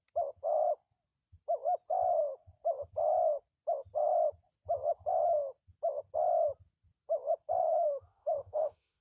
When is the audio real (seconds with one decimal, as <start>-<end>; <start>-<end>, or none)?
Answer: 0.0-7.6